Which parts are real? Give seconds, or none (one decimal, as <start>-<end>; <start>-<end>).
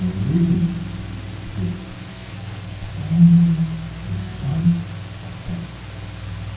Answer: 0.0-2.1; 2.9-4.2; 4.8-6.6